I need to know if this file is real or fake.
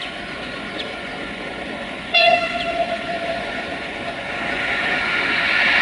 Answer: fake